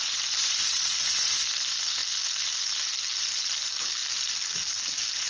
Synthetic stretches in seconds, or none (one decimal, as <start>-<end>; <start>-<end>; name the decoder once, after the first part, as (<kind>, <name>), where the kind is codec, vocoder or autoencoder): none